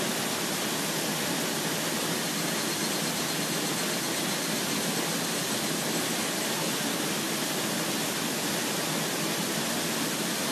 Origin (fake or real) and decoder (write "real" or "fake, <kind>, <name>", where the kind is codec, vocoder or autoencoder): real